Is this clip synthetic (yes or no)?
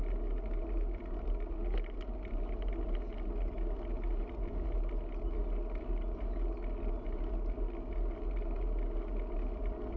no